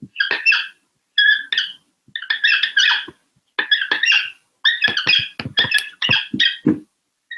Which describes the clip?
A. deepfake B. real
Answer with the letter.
B